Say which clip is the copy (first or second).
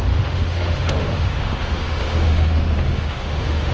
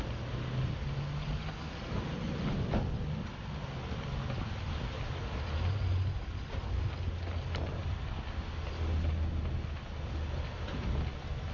first